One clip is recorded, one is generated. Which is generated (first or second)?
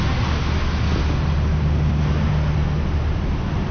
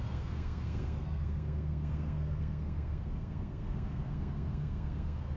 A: second